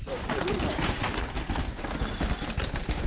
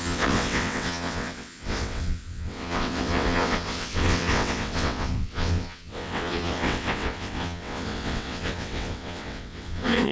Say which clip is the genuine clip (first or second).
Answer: first